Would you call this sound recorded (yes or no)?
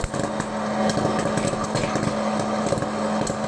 yes